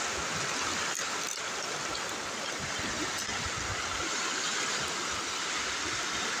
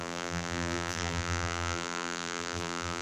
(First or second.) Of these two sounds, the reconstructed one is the second